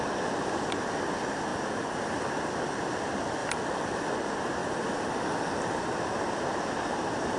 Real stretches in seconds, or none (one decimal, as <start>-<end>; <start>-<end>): 0.0-1.5; 2.3-3.4; 4.1-4.6; 5.8-7.4